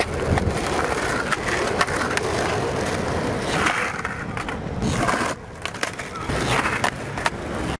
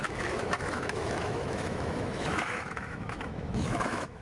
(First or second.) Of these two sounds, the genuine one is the first